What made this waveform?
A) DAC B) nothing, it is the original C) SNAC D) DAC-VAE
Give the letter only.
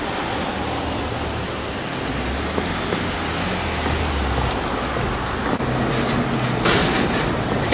B